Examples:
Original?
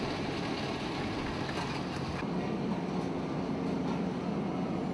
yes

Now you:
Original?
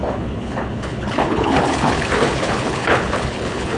no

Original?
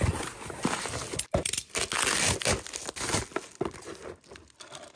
yes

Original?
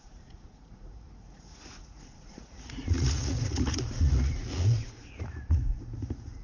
no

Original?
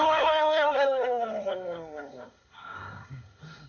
no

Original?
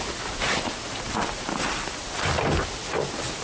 yes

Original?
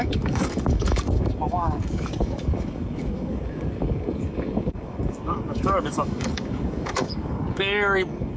no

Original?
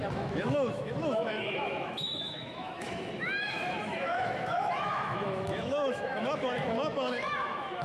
no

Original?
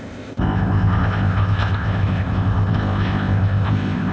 no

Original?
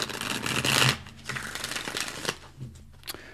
yes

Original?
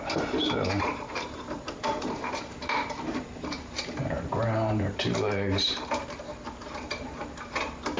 no